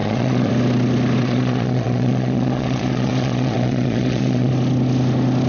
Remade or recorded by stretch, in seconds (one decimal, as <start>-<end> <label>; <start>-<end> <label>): 0.0-0.5 remade; 0.5-1.2 recorded; 1.2-4.5 remade; 4.5-5.5 recorded